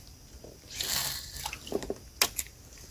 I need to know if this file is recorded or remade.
recorded